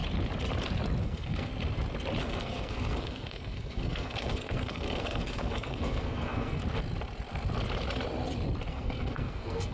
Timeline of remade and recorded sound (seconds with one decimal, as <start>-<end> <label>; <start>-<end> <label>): 0.0-1.0 recorded; 1.0-1.5 remade; 1.5-2.2 recorded; 2.2-6.6 remade; 6.6-8.7 recorded; 8.7-9.7 remade